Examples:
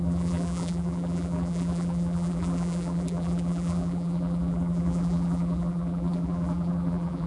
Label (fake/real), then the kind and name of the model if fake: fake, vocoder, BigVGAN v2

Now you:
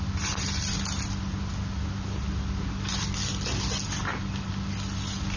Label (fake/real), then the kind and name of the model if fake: real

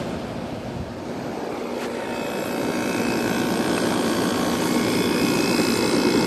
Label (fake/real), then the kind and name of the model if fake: real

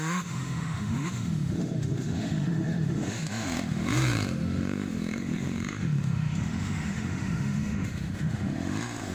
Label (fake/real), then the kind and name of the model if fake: fake, autoencoder, DAC-VAE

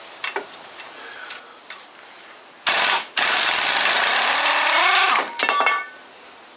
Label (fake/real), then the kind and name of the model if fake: real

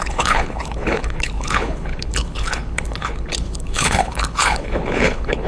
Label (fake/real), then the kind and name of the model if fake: fake, codec, HILCodec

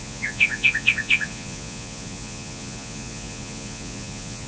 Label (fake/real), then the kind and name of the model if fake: fake, vocoder, Vocos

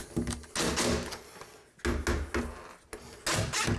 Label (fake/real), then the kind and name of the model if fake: real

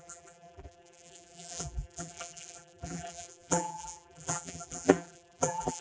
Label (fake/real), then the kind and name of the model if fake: fake, vocoder, BigVGAN v2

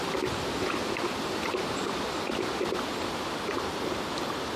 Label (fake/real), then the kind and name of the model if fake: real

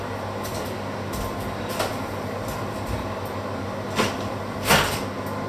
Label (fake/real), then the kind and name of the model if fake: real